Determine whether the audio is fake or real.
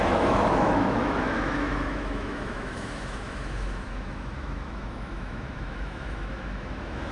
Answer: fake